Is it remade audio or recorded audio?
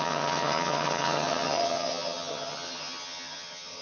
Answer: remade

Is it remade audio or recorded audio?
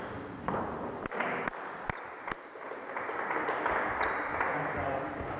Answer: recorded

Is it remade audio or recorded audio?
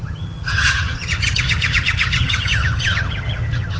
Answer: remade